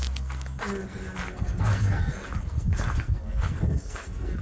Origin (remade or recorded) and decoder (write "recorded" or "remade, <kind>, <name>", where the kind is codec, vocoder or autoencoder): remade, codec, SNAC